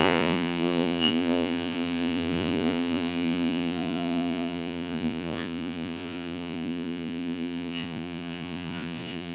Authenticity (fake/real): fake